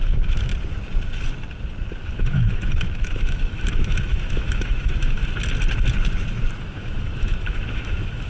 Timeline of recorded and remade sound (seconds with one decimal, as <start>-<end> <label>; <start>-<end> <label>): 0.0-0.5 remade; 0.5-2.0 recorded; 2.0-5.2 remade; 5.2-6.6 recorded; 6.6-8.3 remade